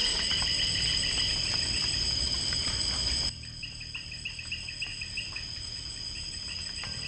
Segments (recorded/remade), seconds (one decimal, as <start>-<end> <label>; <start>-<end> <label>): 0.0-4.9 remade; 4.9-6.3 recorded; 6.3-7.1 remade